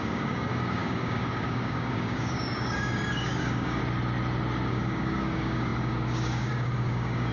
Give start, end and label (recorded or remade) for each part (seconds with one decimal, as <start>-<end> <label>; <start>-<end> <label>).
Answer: 0.0-3.8 remade; 3.8-4.7 recorded; 4.7-7.3 remade